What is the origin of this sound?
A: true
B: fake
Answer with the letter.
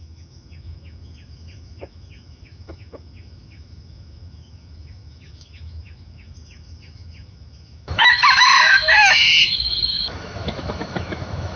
B